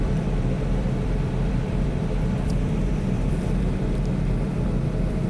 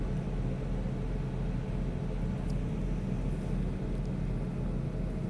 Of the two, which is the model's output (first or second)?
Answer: first